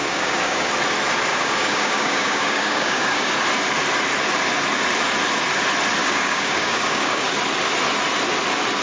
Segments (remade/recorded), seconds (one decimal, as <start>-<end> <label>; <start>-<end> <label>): 0.0-0.7 remade; 0.7-1.3 recorded; 1.3-3.3 remade; 3.3-6.0 recorded; 6.0-7.3 remade; 7.3-8.8 recorded